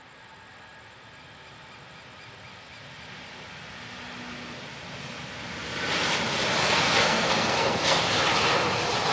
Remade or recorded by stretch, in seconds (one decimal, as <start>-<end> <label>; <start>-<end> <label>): 0.0-6.6 recorded; 6.6-8.0 remade; 8.0-9.1 recorded